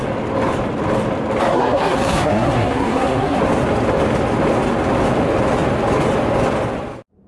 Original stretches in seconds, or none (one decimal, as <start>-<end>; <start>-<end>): 0.0-1.5; 3.4-7.3